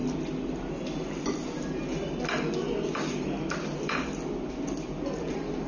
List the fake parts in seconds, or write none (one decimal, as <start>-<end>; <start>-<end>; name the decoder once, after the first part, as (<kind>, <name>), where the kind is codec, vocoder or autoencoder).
none